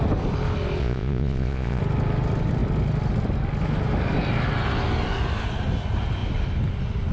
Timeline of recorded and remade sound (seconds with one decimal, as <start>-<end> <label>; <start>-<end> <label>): 0.0-0.8 recorded; 0.8-1.8 remade; 1.8-7.1 recorded